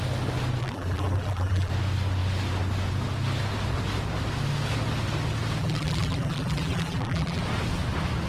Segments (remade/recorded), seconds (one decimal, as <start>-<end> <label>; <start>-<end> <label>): 0.0-0.6 recorded; 0.6-1.7 remade; 1.7-5.6 recorded; 5.6-7.4 remade; 7.4-8.3 recorded